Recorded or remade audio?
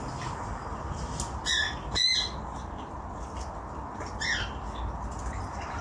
recorded